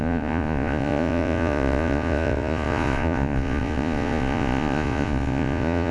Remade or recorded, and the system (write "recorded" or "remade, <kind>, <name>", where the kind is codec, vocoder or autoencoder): remade, vocoder, Vocos